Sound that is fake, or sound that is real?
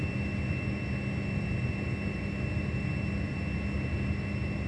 real